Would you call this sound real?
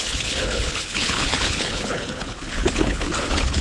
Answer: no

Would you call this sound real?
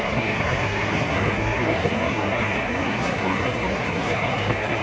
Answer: no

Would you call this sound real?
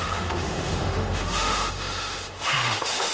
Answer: no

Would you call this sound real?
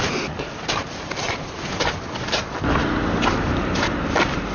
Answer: yes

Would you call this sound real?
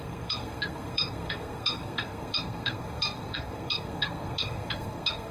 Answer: no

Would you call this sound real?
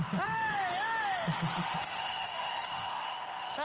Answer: no